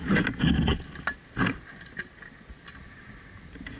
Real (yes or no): yes